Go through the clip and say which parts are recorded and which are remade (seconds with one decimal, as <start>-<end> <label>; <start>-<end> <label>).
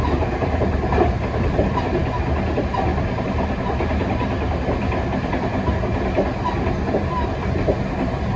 0.0-8.4 recorded